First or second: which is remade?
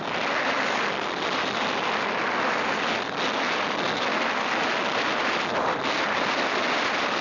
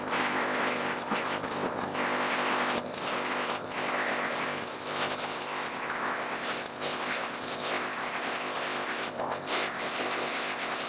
second